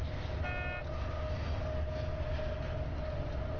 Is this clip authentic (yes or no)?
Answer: yes